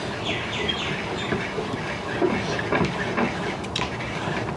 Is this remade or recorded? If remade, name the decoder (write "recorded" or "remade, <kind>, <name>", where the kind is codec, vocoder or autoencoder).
recorded